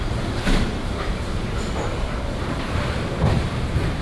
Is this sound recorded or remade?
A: remade